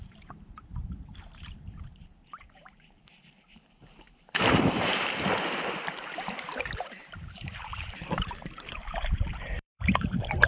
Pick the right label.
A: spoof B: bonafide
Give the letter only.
A